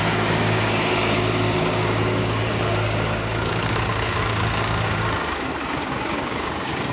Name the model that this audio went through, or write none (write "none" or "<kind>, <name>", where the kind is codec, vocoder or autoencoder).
codec, DAC